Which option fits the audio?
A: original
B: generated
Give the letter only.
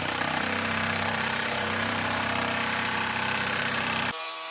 B